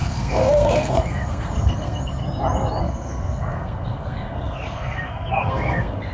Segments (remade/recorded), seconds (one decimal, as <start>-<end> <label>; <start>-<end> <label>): 0.0-2.2 remade; 2.2-2.8 recorded; 2.8-6.1 remade